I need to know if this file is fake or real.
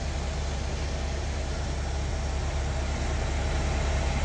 real